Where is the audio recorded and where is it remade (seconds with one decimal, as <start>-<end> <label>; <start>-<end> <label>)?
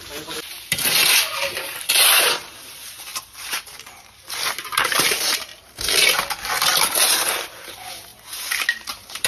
0.0-5.5 remade; 5.5-6.8 recorded; 6.8-8.1 remade; 8.1-8.9 recorded; 8.9-9.3 remade